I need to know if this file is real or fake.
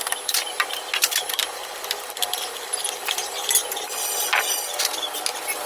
real